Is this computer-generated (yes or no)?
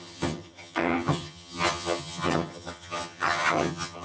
yes